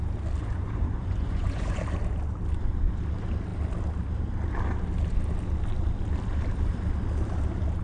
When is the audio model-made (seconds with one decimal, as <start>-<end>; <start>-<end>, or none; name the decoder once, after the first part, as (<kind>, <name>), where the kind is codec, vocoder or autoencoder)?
0.4-1.8 (vocoder, Vocos)